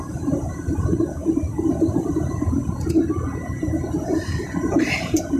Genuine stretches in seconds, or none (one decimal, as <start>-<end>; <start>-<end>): 1.2-1.8; 2.6-4.1

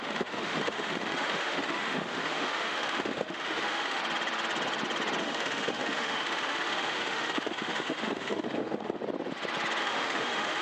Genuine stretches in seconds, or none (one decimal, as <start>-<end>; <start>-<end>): 4.0-5.2; 9.0-9.8

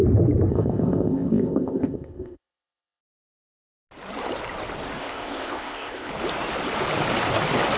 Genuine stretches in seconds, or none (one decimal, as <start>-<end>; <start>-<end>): 0.0-0.5; 3.0-5.0; 6.1-7.8

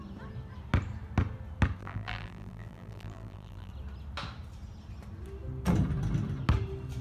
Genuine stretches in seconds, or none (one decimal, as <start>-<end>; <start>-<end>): 0.0-1.8; 3.7-7.0

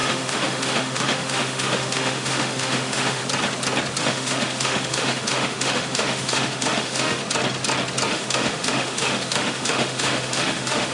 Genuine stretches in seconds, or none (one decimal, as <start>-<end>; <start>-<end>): 3.2-4.0; 7.2-8.1

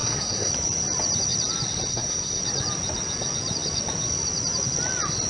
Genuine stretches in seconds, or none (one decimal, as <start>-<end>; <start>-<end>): 0.5-1.9; 2.4-5.3

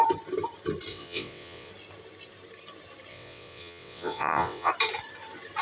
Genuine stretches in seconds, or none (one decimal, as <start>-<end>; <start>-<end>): 0.0-0.9; 1.7-3.1; 4.7-5.6